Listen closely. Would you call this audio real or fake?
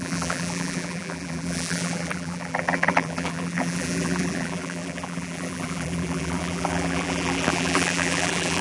fake